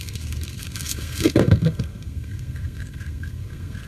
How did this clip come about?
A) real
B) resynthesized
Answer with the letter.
B